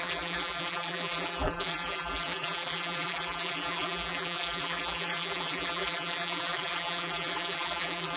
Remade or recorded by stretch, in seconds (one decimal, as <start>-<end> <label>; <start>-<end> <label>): 0.0-8.2 remade